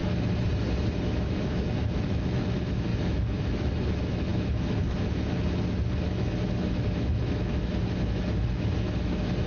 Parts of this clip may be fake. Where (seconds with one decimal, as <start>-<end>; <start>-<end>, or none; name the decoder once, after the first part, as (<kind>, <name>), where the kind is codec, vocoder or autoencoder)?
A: 1.0-9.5 (autoencoder, DAC-VAE)